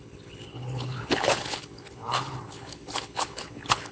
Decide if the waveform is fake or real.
fake